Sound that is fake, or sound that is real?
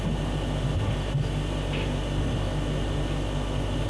real